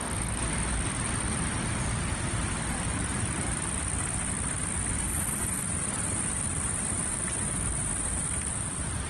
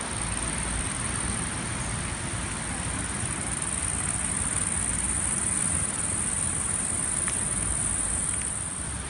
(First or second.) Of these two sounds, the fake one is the first